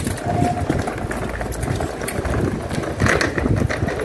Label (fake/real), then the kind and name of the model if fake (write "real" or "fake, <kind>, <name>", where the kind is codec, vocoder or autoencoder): real